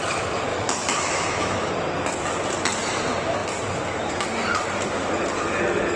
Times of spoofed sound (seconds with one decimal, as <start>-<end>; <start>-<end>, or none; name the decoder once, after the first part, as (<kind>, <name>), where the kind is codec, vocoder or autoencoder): 0.5-1.7 (autoencoder, DAC-VAE)